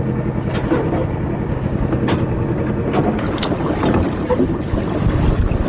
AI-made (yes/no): no